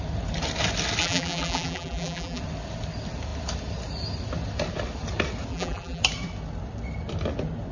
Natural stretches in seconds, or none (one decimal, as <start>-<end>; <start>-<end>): 0.0-1.0; 2.4-5.5; 6.0-7.7